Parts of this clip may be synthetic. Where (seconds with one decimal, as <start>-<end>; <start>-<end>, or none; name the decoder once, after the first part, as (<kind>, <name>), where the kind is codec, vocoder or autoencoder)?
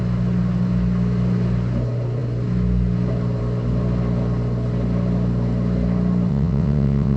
6.3-7.2 (vocoder, WaveNeXt)